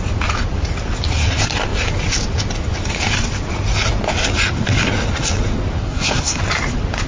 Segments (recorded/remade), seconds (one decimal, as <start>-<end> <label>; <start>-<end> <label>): 0.0-5.8 recorded; 5.8-6.4 remade; 6.4-7.1 recorded